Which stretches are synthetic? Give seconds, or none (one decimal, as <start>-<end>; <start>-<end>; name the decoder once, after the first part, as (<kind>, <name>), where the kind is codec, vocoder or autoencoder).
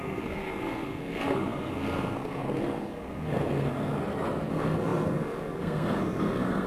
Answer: 0.0-4.0 (codec, SNAC); 4.5-6.7